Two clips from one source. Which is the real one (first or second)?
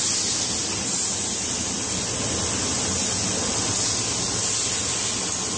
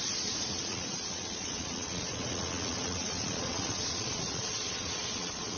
first